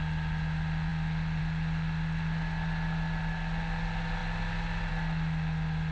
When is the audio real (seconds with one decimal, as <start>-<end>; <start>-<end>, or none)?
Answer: 0.0-5.9